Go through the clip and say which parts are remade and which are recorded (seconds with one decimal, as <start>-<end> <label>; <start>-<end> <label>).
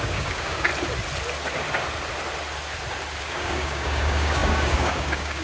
0.0-0.7 remade; 0.7-3.2 recorded; 3.2-5.4 remade